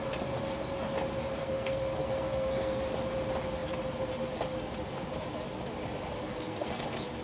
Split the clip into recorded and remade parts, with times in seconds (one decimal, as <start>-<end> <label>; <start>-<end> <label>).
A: 0.0-1.4 recorded; 1.4-2.8 remade; 2.8-6.2 recorded; 6.2-6.8 remade; 6.8-7.2 recorded